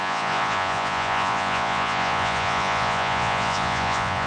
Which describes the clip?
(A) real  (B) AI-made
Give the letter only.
B